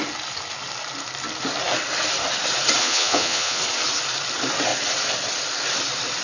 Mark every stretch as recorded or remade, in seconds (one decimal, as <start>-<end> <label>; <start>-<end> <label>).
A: 0.0-2.8 recorded; 2.8-3.6 remade; 3.6-6.2 recorded